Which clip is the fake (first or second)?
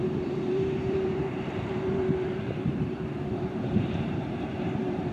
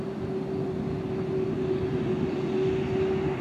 first